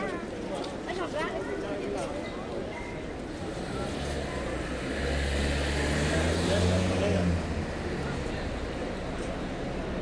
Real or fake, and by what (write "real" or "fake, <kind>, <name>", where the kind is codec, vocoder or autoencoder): real